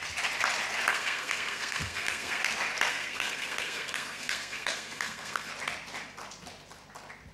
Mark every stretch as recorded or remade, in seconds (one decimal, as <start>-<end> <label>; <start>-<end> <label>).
0.0-0.9 recorded; 0.9-2.4 remade; 2.4-2.9 recorded; 2.9-5.5 remade; 5.5-7.3 recorded